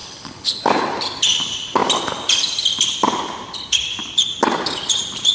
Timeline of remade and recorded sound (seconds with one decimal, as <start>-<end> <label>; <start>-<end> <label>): 0.0-0.6 remade; 0.6-5.3 recorded